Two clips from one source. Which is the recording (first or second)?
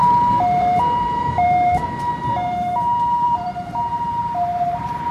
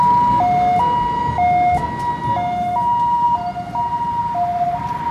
second